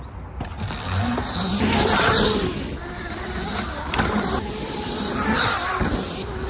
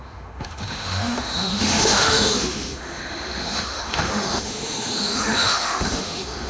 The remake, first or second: second